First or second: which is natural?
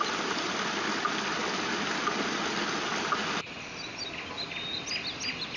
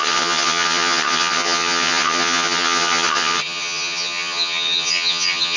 first